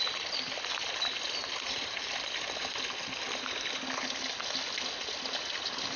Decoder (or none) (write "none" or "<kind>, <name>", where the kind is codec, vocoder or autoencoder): none